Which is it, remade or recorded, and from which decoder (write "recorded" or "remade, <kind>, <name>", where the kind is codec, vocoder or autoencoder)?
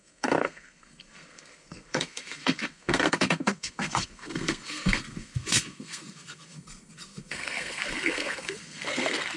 remade, codec, SNAC